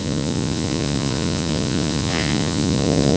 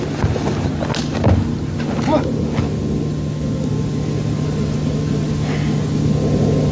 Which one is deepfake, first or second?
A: first